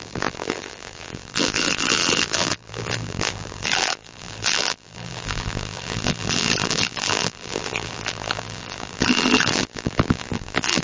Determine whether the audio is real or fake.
fake